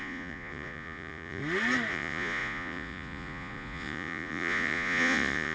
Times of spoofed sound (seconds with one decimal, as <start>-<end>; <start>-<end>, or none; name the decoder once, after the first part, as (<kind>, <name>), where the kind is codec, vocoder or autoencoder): 0.0-1.4 (vocoder, Vocos); 1.9-5.5